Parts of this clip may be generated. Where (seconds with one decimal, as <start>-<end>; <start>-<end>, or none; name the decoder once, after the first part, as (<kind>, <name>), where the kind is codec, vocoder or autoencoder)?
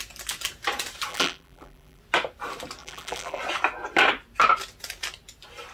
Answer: 1.1-2.0 (vocoder, BigVGAN v2); 2.8-3.4